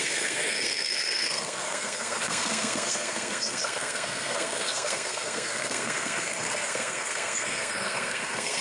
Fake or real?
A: fake